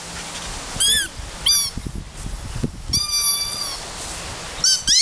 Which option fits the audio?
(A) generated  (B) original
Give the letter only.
B